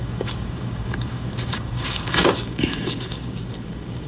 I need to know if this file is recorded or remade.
remade